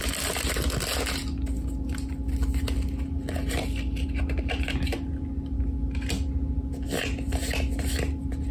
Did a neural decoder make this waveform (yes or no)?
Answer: no